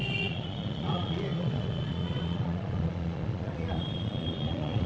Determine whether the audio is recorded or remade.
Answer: remade